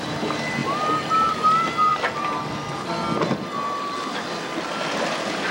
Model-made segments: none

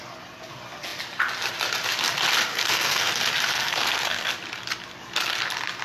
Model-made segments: 2.5-3.1 (codec, SNAC); 3.5-4.3

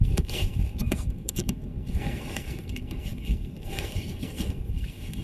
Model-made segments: 0.0-5.2 (codec, SNAC)

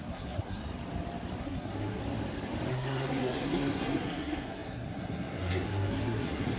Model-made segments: 0.0-0.6 (codec, SNAC); 1.4-2.0; 2.7-6.6

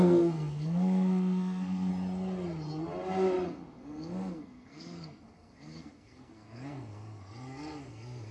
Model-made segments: 0.0-1.9 (codec, SNAC); 3.5-8.3